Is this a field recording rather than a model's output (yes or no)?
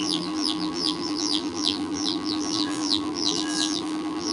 no